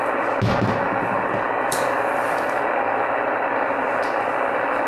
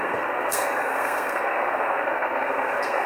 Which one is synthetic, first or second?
second